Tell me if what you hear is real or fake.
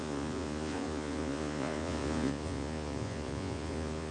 fake